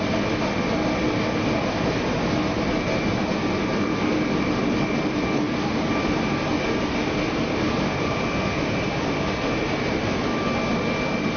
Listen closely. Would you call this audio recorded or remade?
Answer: recorded